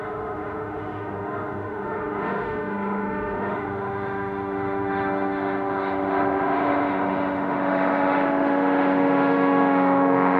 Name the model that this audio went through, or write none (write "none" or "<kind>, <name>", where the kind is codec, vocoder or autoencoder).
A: autoencoder, DAC-VAE